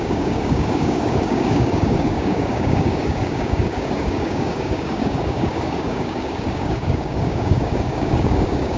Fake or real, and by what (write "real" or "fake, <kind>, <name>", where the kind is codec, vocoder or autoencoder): fake, codec, DAC